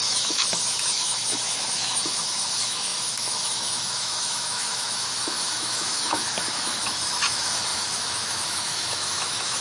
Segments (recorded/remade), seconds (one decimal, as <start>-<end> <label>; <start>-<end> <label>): 0.0-9.6 remade